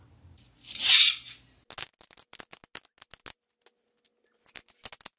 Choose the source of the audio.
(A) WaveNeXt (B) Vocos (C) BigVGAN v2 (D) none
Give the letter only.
D